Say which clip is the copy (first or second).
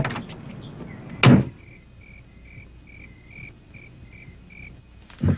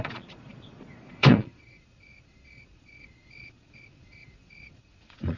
second